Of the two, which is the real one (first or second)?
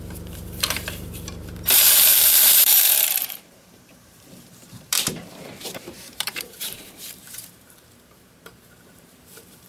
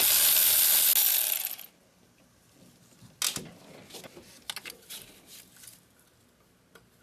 second